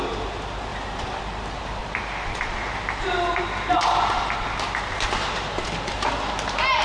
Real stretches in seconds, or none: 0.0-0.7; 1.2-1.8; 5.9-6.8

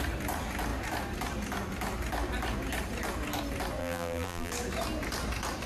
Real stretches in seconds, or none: 0.0-3.8; 4.5-5.7

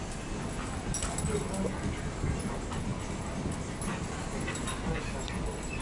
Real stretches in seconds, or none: 0.0-2.9; 3.4-3.9; 4.6-5.8

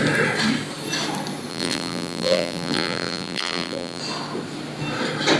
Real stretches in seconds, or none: 0.0-1.5; 4.0-5.4

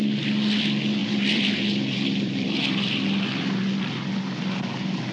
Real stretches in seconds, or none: 0.0-1.0; 4.1-5.1

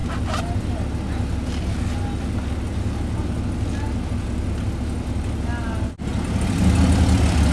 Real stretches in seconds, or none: 0.0-7.5